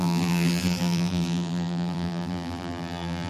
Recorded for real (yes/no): no